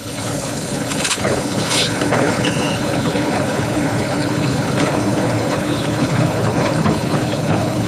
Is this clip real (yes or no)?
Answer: no